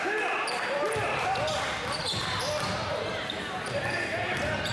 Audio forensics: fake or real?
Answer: fake